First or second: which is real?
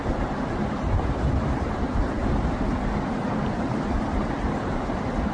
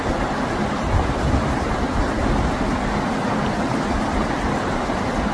second